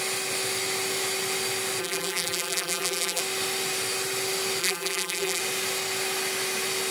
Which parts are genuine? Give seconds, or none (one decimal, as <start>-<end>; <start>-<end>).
0.0-1.8; 3.2-4.6; 5.4-6.9